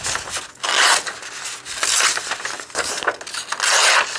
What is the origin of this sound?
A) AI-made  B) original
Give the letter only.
B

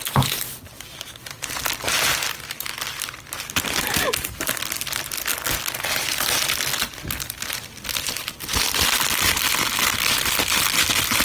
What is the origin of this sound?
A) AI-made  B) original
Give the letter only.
B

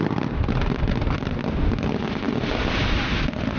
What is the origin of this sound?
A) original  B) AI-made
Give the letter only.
A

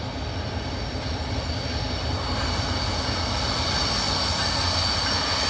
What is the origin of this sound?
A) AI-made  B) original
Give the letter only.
B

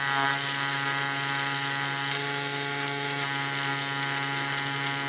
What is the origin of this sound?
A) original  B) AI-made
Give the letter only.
A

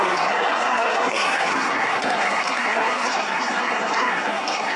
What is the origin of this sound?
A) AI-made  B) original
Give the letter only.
A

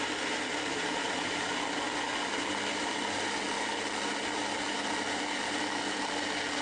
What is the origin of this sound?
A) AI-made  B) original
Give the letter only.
B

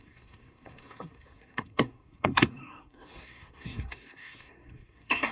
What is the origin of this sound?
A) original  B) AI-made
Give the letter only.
B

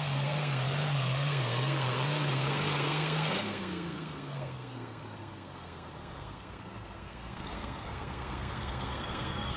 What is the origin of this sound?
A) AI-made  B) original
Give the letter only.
A